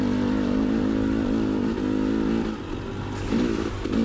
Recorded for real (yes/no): yes